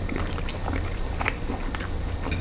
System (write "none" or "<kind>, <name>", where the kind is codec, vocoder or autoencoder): none